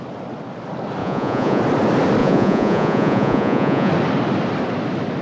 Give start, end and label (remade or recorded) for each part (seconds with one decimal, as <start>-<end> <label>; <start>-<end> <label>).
0.0-1.0 recorded; 1.0-1.6 remade; 1.6-2.2 recorded; 2.2-3.9 remade; 3.9-5.2 recorded